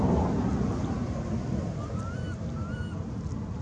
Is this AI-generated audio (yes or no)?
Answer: no